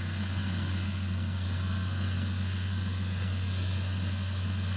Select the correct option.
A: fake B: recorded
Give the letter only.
A